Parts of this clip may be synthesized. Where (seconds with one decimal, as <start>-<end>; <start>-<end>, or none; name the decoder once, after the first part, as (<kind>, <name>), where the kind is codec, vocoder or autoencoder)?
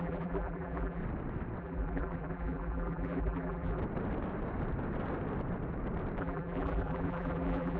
0.0-1.0 (vocoder, BigVGAN v2); 1.6-3.8; 6.2-7.8